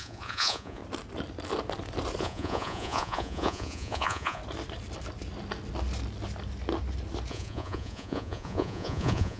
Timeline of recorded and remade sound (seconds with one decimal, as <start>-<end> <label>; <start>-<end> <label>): 0.0-0.8 remade; 0.8-2.2 recorded; 2.2-4.4 remade; 4.4-7.3 recorded; 7.3-9.4 remade